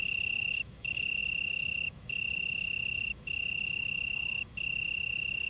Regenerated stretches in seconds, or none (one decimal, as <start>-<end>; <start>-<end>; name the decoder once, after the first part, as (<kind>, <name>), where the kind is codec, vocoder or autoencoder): 0.0-5.5 (autoencoder, DAC-VAE)